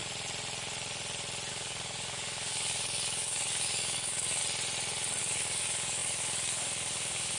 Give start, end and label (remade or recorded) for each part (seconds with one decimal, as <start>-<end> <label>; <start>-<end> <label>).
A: 0.0-1.5 recorded; 1.5-4.4 remade; 4.4-5.2 recorded; 5.2-7.4 remade